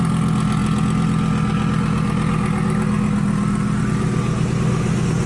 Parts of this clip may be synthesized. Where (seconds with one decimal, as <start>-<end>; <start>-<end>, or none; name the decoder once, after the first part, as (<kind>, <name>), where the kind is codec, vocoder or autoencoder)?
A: none